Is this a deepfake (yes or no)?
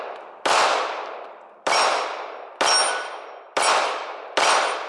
no